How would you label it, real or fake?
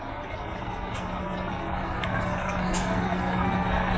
fake